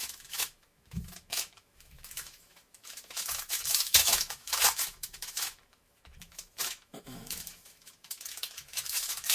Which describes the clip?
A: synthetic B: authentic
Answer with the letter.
A